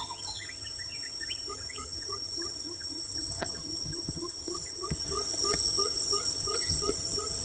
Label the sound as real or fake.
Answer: fake